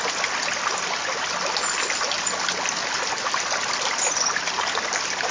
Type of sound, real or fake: real